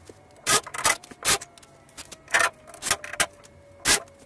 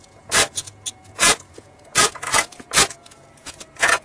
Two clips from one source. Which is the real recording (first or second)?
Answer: first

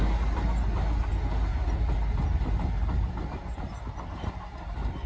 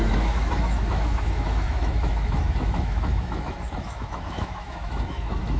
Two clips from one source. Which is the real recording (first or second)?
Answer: first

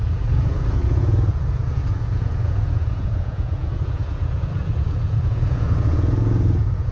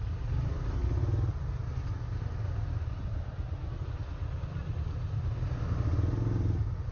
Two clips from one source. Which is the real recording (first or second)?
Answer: second